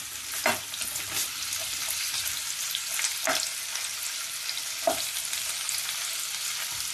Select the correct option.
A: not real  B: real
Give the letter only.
B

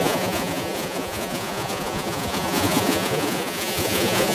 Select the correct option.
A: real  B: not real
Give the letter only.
B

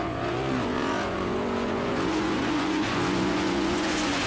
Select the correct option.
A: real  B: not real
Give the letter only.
B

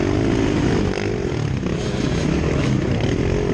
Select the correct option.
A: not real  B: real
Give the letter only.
B